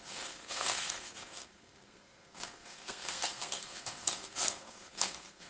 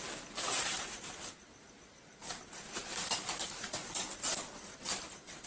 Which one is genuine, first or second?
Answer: second